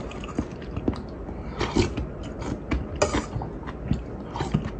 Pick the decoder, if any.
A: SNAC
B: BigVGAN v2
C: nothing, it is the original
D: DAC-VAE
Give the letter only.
C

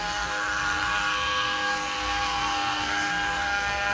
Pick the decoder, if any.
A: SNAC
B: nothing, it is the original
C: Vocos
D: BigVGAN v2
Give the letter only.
A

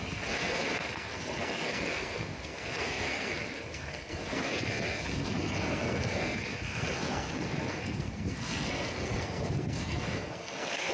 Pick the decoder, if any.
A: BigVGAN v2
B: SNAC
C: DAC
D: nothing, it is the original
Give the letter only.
B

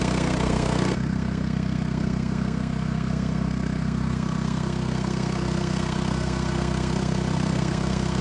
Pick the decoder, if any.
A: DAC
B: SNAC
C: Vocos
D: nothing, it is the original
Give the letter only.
B